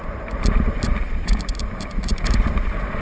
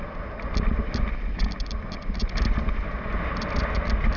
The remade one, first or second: first